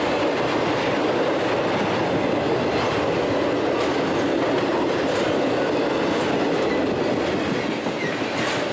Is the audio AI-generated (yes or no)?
no